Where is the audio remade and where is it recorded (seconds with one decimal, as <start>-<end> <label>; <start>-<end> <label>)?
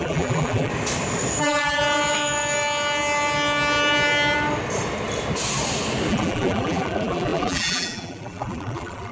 0.0-0.7 remade; 0.7-1.4 recorded; 1.4-1.8 remade; 1.8-6.1 recorded; 6.1-9.1 remade